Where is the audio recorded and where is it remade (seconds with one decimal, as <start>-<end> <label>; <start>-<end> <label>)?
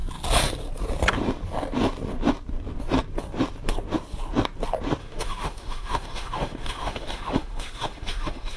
0.0-5.0 recorded; 5.0-8.6 remade